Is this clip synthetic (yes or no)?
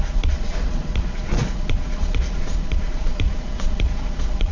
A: yes